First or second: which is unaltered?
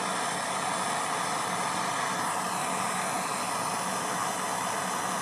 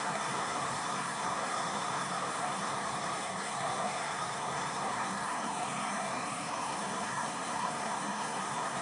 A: first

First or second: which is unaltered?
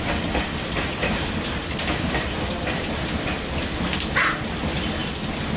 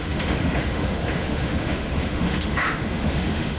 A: first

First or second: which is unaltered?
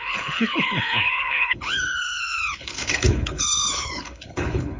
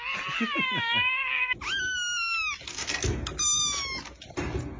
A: second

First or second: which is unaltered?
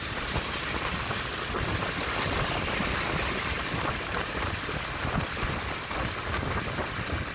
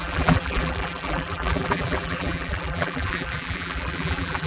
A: first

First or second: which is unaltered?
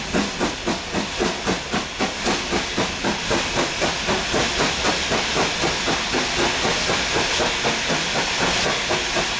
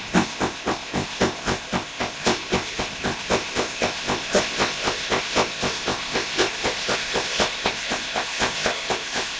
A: first